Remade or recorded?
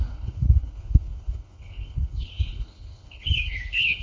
remade